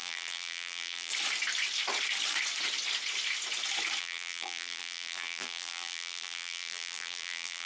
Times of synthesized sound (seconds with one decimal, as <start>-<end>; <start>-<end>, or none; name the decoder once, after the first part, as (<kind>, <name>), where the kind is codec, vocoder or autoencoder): 0.0-1.1 (vocoder, BigVGAN v2); 4.0-7.7